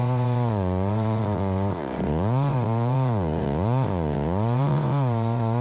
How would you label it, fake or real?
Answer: fake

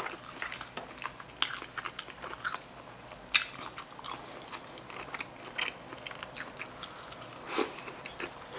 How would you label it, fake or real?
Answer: real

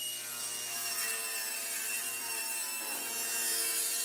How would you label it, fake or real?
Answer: real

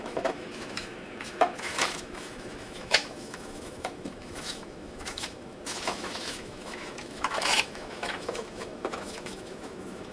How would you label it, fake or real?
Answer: fake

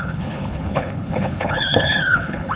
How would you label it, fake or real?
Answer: fake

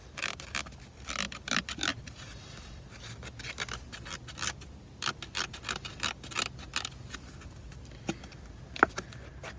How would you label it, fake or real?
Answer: real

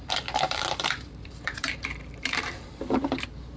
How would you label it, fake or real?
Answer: fake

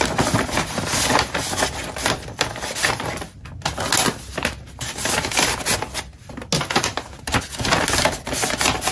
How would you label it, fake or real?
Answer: real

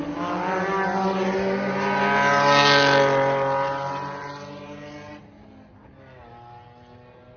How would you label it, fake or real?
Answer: real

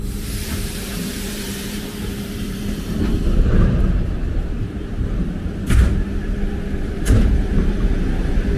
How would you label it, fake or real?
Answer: fake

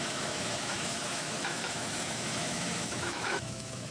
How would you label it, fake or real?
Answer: fake